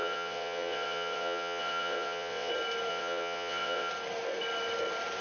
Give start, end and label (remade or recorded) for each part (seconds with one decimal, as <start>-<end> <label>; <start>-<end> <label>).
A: 0.0-2.5 remade; 2.5-2.9 recorded; 2.9-3.9 remade; 3.9-5.2 recorded